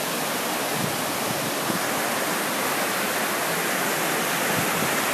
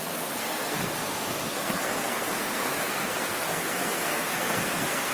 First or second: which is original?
first